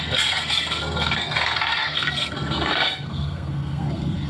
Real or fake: fake